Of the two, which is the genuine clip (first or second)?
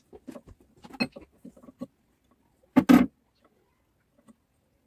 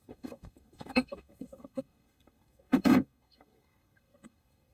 first